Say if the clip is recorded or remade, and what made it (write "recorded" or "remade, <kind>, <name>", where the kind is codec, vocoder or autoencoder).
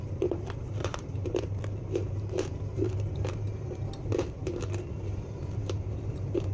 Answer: remade, vocoder, BigVGAN v2